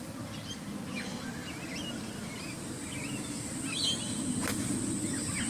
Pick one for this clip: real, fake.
real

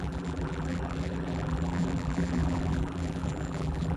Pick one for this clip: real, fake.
fake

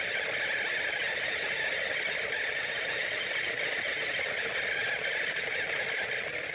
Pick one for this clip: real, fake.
real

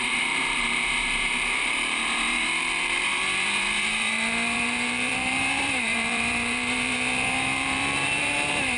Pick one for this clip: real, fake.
fake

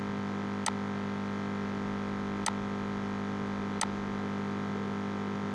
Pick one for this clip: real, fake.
real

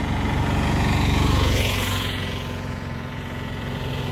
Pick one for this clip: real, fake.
fake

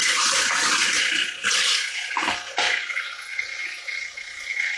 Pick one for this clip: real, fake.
real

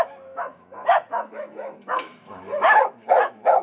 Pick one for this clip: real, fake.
fake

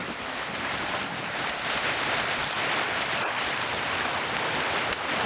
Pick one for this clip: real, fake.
real